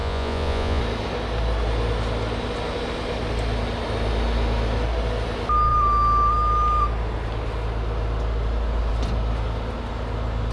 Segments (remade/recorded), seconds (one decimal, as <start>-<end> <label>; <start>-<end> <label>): 0.0-0.8 remade; 0.8-10.5 recorded